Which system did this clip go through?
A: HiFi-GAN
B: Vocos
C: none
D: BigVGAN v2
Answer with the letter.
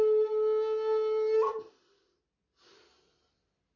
C